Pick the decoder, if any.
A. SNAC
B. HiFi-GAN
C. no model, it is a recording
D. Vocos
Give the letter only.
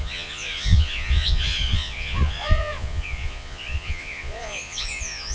D